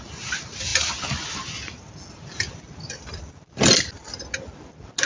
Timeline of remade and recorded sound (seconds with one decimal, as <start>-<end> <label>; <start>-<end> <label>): 0.0-5.1 recorded